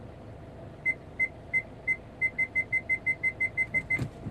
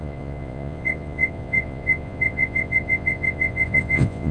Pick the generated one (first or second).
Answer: second